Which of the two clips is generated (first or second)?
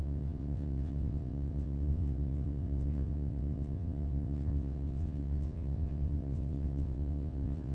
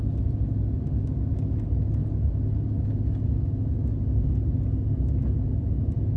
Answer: first